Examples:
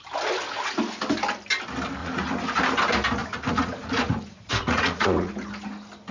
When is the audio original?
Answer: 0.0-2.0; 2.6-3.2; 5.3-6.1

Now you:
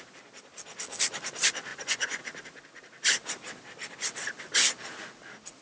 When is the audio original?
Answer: 0.0-1.7; 2.2-5.6